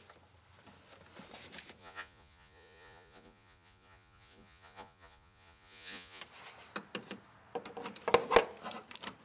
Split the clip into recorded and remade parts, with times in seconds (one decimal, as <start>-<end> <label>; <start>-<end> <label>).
0.0-1.8 recorded; 1.8-6.2 remade; 6.2-9.2 recorded